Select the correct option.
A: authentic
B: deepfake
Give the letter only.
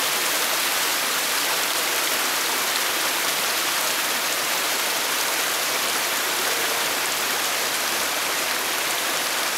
B